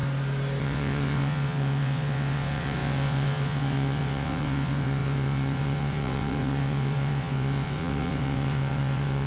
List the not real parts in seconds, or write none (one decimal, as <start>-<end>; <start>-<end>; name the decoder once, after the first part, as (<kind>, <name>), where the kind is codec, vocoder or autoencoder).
0.6-9.3 (vocoder, WaveNeXt)